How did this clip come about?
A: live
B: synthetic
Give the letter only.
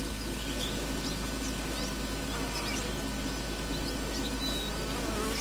A